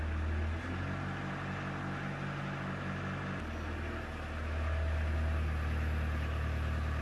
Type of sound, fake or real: real